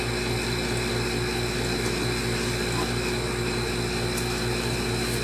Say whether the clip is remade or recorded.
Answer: recorded